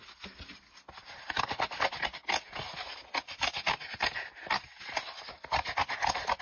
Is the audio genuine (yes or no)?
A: yes